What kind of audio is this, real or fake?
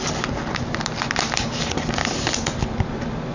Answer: real